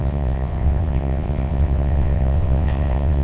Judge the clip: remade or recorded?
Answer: remade